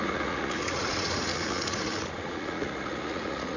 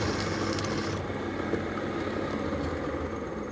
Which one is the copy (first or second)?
first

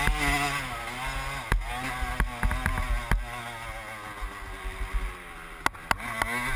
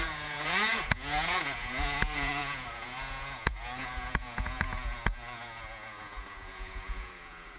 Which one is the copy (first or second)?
second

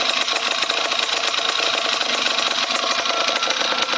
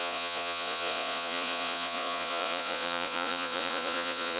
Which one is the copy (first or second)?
second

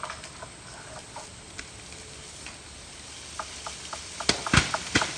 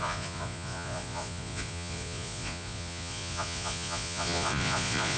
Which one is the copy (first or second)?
second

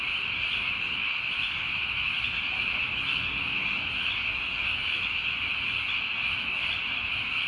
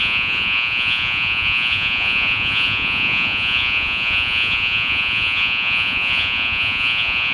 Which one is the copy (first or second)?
second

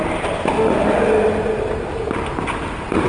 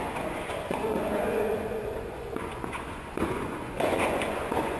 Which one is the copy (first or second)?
second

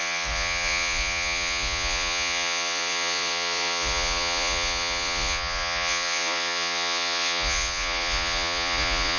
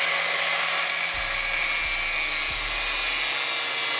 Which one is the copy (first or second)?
first